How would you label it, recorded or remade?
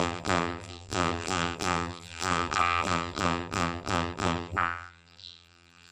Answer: remade